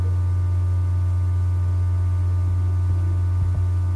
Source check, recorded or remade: recorded